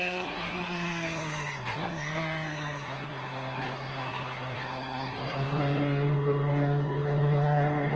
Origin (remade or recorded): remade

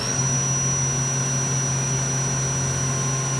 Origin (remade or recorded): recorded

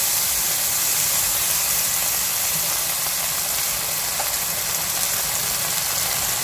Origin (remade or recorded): recorded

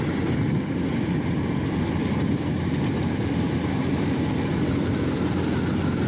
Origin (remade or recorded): recorded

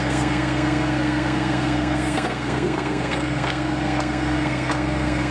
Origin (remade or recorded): remade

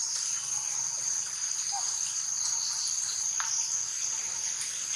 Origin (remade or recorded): recorded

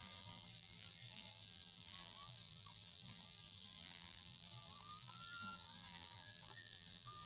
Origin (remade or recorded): remade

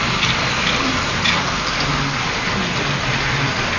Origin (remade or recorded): recorded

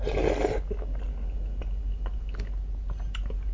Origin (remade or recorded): recorded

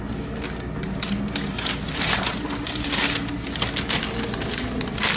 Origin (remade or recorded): recorded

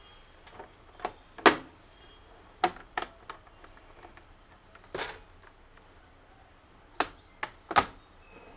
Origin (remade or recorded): recorded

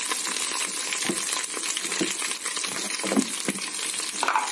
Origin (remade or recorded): recorded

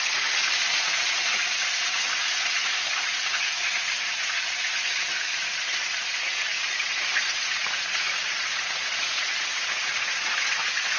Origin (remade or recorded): remade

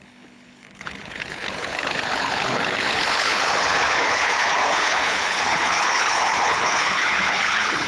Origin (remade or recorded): remade